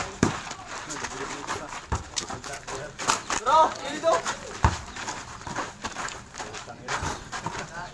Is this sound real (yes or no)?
no